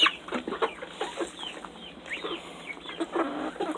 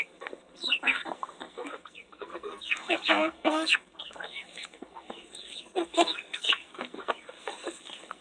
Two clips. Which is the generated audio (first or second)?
second